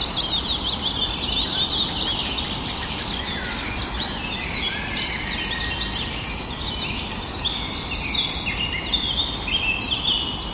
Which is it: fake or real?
real